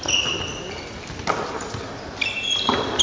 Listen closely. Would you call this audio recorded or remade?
recorded